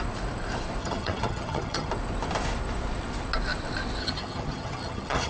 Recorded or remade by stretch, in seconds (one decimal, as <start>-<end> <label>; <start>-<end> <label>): 0.0-0.8 recorded; 0.8-1.9 remade; 1.9-4.0 recorded; 4.0-5.3 remade